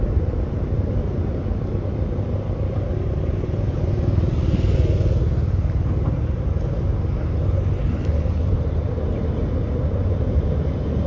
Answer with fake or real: real